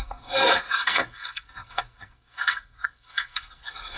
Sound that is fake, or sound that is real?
fake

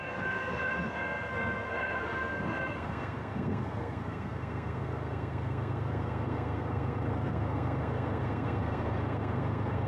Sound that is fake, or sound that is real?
fake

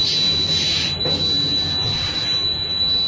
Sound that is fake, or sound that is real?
real